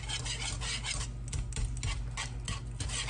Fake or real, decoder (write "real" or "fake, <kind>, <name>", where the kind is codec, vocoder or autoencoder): real